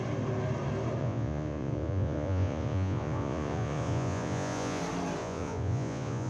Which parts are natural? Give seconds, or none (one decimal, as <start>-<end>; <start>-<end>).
0.0-1.0; 4.8-5.2